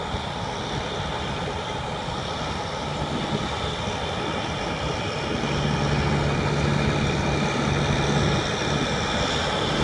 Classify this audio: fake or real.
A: real